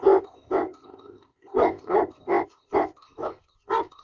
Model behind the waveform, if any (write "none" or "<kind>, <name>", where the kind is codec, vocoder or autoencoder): codec, ZipCodec